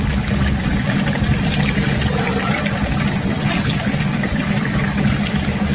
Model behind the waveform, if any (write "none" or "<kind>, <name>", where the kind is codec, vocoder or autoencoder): none